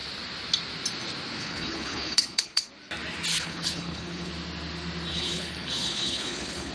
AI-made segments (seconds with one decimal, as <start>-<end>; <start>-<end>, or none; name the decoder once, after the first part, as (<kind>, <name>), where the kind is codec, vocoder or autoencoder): 1.4-2.7 (codec, HILCodec); 3.3-4.3; 5.1-6.7

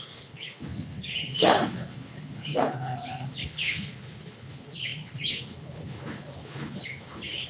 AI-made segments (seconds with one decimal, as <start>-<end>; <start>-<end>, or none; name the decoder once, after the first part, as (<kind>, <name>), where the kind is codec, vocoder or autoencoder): 0.0-7.5 (codec, HILCodec)

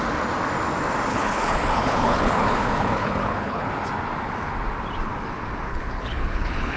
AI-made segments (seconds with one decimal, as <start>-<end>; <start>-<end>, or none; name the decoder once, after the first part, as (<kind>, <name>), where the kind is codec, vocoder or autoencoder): 1.1-3.7 (codec, HILCodec); 5.7-6.8

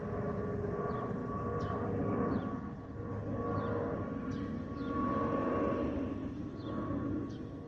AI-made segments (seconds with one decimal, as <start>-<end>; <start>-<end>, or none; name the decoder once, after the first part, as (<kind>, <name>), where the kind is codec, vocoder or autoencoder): none

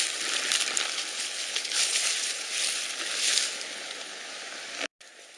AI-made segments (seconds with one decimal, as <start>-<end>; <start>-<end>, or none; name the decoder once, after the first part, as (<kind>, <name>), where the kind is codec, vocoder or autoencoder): 1.1-2.0 (codec, HILCodec); 3.7-4.3

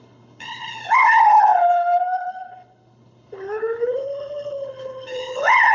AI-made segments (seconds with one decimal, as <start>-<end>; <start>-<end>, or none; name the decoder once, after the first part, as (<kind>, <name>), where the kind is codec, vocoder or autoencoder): 0.0-5.7 (codec, HILCodec)

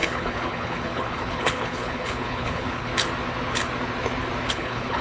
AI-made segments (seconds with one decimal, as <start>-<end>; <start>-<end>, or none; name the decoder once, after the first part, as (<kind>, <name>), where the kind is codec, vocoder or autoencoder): 0.0-2.9 (codec, HILCodec); 4.5-5.0

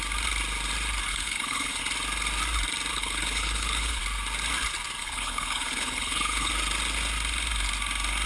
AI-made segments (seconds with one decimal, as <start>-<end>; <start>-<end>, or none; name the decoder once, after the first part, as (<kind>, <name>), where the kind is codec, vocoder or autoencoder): 1.1-1.8 (codec, HILCodec); 2.9-4.0; 5.0-6.5